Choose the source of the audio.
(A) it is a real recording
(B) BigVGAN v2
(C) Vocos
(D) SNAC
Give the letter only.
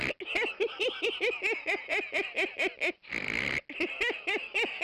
A